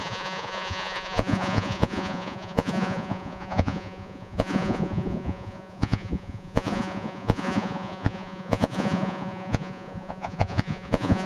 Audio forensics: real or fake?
fake